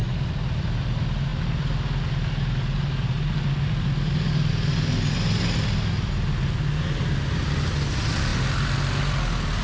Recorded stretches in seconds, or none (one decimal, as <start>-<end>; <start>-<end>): 0.0-9.6